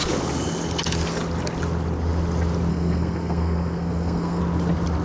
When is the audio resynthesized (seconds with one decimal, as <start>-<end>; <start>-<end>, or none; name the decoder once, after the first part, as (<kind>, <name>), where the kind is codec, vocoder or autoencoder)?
2.7-4.4 (codec, SNAC)